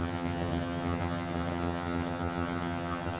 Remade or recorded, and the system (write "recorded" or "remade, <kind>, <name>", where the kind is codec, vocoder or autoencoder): remade, vocoder, HiFi-GAN